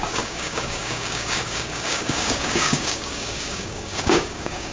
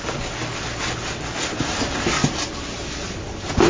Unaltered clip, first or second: second